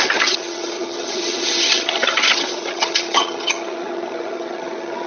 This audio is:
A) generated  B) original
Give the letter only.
A